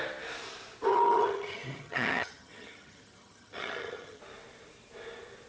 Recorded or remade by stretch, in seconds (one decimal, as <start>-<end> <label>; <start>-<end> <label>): 0.0-0.9 recorded; 0.9-4.2 remade; 4.2-5.5 recorded